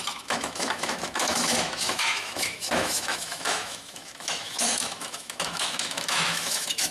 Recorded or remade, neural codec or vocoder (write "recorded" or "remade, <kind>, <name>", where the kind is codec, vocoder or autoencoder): remade, autoencoder, DAC-VAE